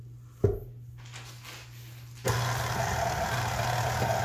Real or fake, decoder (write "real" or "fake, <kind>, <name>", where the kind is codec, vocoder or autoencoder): real